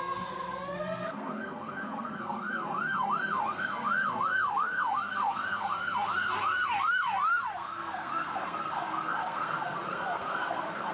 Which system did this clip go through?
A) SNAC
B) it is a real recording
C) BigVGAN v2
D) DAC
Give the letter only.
A